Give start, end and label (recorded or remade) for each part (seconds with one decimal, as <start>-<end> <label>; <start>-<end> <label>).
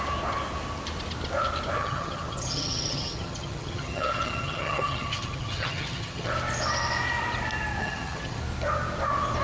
0.0-1.8 recorded; 1.8-6.3 remade; 6.3-7.8 recorded; 7.8-8.4 remade; 8.4-9.4 recorded